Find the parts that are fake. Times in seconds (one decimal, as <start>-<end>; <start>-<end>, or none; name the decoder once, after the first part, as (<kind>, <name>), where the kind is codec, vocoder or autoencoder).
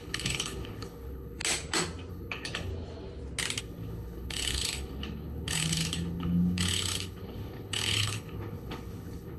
0.0-1.4 (codec, HILCodec); 2.1-2.7; 3.6-9.4